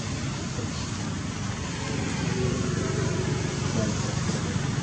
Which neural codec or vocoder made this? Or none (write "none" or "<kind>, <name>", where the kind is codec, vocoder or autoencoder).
none